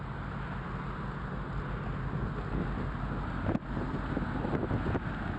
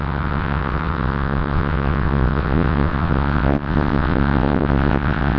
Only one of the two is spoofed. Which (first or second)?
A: second